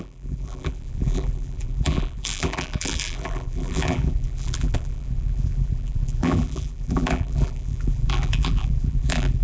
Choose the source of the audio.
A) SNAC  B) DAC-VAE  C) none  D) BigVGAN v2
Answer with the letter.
D